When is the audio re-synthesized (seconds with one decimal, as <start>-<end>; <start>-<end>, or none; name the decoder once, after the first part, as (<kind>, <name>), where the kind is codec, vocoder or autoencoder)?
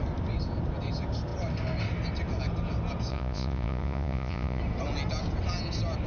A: 3.1-4.6 (vocoder, Vocos)